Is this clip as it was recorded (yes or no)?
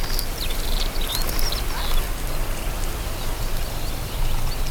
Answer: yes